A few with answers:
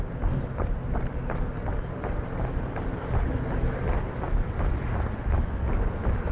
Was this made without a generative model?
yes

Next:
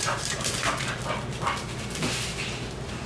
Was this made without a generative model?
yes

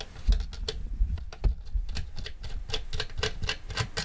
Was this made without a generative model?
yes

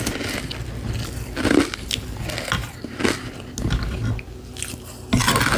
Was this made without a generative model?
yes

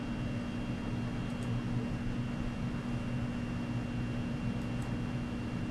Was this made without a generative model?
yes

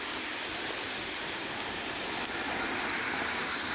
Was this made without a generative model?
yes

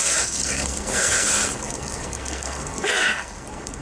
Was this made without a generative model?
no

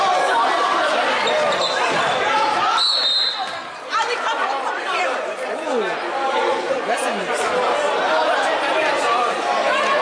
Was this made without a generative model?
yes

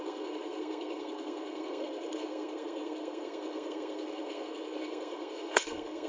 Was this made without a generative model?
no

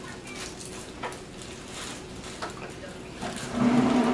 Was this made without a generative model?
yes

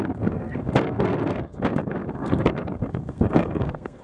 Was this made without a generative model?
no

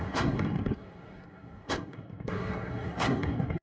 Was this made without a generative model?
no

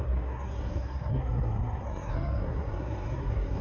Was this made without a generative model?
no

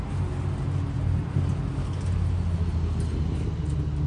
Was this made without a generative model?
yes